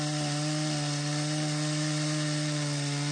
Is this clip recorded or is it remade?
remade